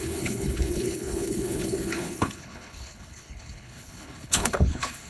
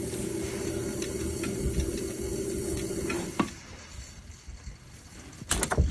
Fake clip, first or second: first